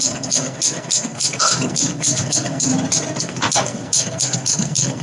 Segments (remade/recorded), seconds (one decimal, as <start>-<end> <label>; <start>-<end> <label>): 0.0-2.7 remade; 2.7-3.2 recorded; 3.2-5.0 remade